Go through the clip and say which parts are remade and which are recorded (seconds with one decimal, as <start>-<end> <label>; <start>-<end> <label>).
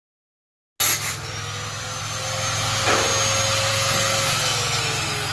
0.0-3.7 recorded; 3.7-4.8 remade; 4.8-5.3 recorded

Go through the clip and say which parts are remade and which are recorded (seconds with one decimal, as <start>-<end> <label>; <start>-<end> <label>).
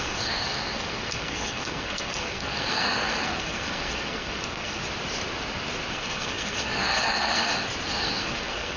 0.0-4.8 remade; 4.8-5.9 recorded; 5.9-7.5 remade; 7.5-8.0 recorded; 8.0-8.8 remade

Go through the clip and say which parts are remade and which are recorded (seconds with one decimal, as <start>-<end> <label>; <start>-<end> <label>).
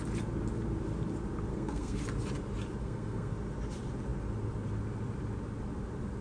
0.0-1.5 recorded; 1.5-2.0 remade; 2.0-2.8 recorded; 2.8-3.3 remade; 3.3-6.2 recorded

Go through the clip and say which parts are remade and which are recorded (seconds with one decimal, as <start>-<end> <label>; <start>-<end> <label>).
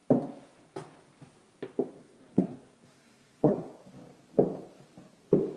0.0-2.0 recorded; 2.0-3.7 remade; 3.7-5.6 recorded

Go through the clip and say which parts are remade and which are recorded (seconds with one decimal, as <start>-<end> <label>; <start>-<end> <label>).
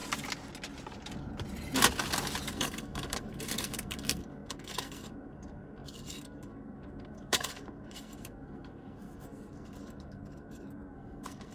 0.0-2.5 recorded; 2.5-11.5 remade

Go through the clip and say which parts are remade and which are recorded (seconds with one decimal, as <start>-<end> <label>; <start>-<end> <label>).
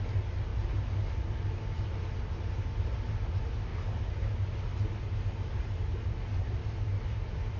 0.0-7.6 recorded